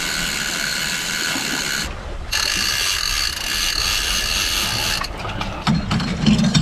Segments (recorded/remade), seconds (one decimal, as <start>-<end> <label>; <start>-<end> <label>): 0.0-0.7 recorded; 0.7-2.7 remade; 2.7-6.6 recorded